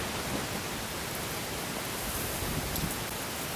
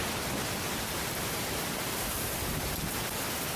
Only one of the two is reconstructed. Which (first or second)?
second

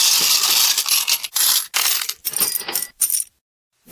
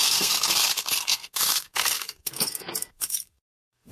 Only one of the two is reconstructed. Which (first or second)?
second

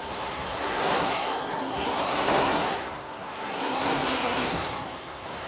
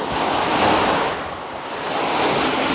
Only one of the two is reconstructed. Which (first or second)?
first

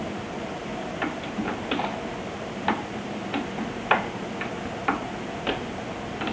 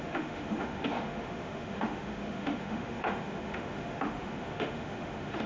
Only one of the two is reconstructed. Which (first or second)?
second